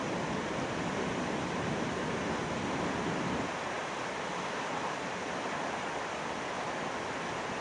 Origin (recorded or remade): recorded